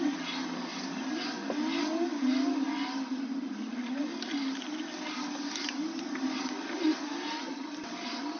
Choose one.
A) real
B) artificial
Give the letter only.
A